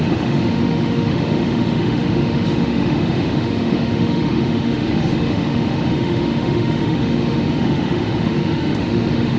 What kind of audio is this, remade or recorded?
remade